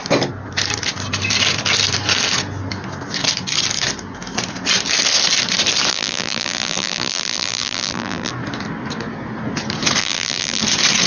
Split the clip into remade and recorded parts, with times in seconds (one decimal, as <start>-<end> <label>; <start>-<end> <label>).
0.0-5.9 recorded; 5.9-8.3 remade; 8.3-10.0 recorded; 10.0-10.6 remade; 10.6-11.1 recorded